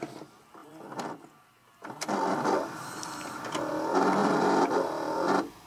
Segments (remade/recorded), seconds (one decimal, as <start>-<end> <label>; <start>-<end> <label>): 0.0-0.6 recorded; 0.6-3.7 remade; 3.7-4.2 recorded; 4.2-5.7 remade